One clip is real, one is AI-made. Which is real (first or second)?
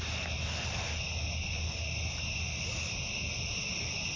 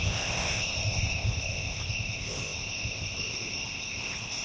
first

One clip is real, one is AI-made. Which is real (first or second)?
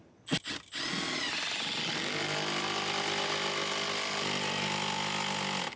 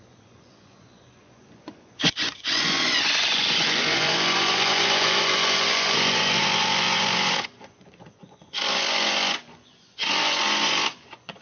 first